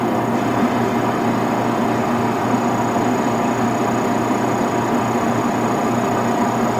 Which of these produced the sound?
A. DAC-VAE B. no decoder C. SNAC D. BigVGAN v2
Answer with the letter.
B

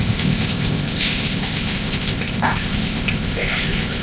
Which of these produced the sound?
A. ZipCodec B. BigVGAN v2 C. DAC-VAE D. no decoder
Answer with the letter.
A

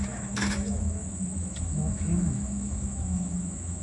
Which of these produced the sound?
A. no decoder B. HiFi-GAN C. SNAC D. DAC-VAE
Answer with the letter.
D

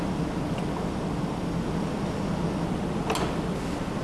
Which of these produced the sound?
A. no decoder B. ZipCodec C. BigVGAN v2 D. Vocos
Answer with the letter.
A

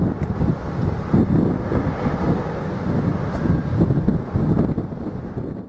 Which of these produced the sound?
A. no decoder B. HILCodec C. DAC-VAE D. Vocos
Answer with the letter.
A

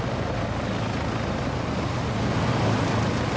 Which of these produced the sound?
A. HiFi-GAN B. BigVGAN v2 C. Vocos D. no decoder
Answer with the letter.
D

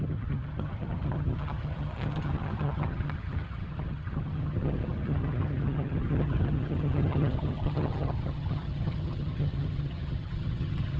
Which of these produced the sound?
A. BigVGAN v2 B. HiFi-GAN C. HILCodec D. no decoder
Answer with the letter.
B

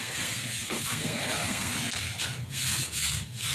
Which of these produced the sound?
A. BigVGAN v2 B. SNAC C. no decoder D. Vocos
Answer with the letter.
B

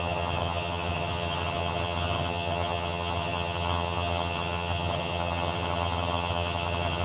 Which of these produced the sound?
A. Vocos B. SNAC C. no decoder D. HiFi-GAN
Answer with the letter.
D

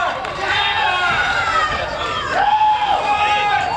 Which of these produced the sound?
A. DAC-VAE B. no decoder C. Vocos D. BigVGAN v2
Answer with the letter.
B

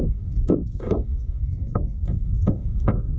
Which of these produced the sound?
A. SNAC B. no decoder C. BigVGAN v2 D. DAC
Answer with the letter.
D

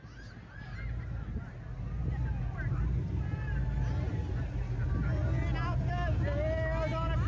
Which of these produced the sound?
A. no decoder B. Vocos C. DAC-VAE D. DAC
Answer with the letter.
A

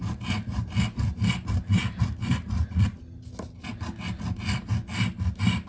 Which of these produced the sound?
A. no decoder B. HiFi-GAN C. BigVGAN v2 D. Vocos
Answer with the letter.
A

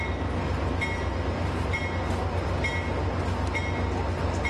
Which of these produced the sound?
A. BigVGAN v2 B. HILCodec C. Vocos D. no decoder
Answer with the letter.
D